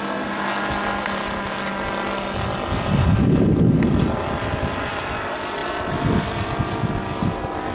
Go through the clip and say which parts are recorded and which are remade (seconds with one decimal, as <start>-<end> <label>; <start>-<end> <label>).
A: 0.0-7.7 recorded